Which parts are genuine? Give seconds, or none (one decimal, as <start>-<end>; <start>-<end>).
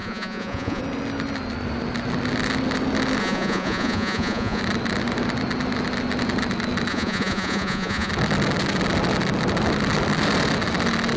0.8-3.2; 4.6-6.9; 8.1-11.2